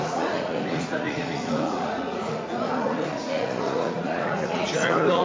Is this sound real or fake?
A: fake